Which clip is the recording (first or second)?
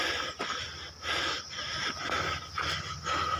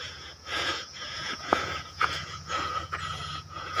first